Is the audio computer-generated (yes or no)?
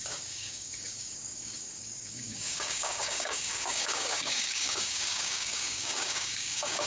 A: yes